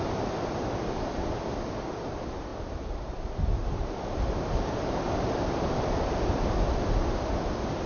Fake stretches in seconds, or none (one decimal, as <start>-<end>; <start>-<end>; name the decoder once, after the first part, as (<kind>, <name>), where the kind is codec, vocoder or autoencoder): 0.0-2.5 (vocoder, BigVGAN v2); 4.9-7.9